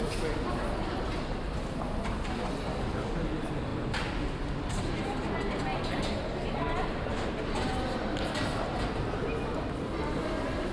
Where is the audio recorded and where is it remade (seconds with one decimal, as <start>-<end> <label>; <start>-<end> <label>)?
0.0-2.7 recorded; 2.7-3.2 remade; 3.2-10.7 recorded